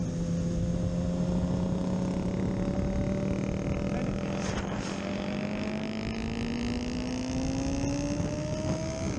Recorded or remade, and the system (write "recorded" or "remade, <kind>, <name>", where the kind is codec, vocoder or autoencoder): recorded